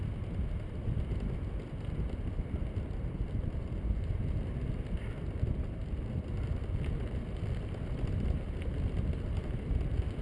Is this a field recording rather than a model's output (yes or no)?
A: yes